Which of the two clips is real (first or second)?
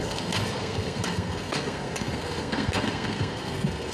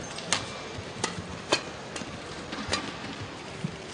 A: second